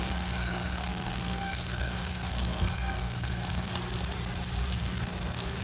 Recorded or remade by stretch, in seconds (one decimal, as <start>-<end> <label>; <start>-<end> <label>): 0.0-3.7 remade; 3.7-4.8 recorded; 4.8-5.6 remade